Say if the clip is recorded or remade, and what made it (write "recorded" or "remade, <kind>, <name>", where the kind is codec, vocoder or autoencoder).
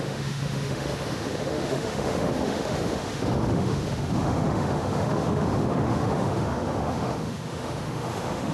remade, autoencoder, DAC-VAE